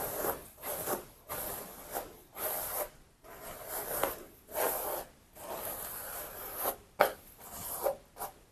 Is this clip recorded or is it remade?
recorded